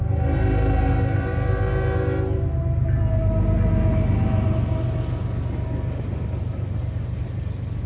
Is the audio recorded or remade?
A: recorded